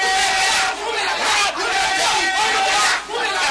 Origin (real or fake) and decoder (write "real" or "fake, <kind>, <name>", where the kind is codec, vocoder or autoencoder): real